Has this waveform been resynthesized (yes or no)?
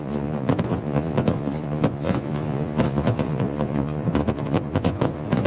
yes